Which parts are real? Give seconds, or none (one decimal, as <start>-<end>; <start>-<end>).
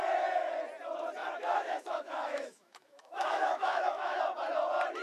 0.0-1.2; 4.2-5.0